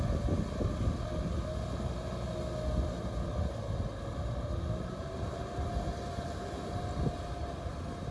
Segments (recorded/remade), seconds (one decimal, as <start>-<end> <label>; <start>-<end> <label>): 0.0-3.3 recorded; 3.3-5.7 remade; 5.7-8.1 recorded